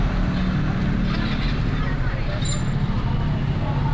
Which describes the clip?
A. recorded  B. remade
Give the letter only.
A